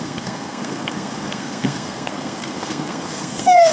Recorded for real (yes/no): no